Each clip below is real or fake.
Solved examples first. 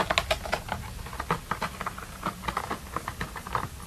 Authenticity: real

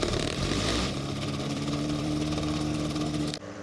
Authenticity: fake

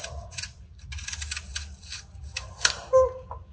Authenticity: real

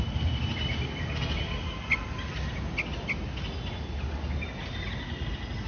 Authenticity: real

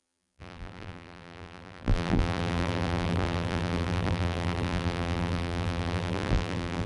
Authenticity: fake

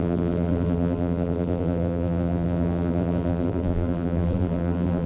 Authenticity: fake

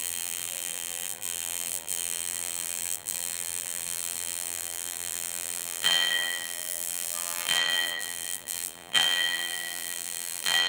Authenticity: fake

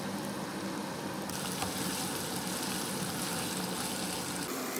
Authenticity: real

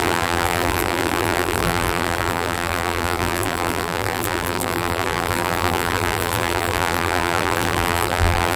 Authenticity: fake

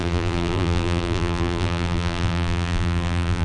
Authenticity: fake